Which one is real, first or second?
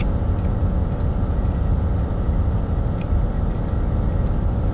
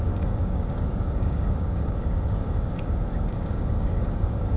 first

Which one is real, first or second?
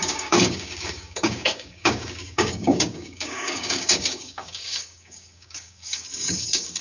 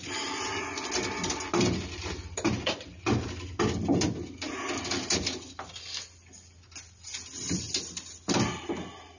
second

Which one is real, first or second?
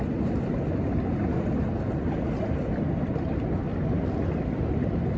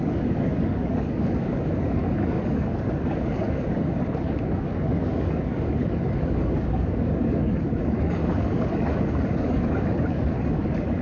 first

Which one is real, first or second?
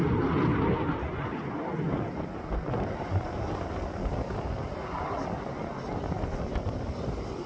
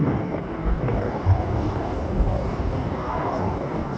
first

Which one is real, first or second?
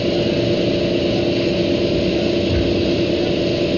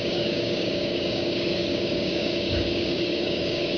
first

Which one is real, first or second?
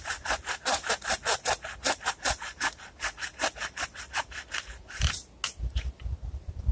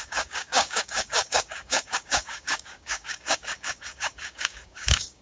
first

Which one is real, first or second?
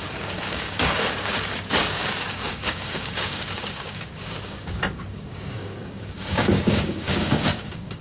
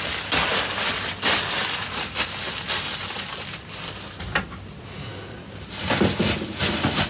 second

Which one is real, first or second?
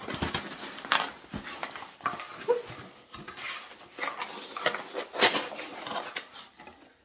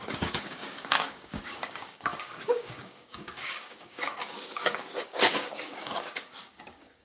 first